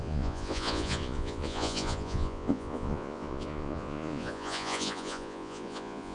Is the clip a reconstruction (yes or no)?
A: yes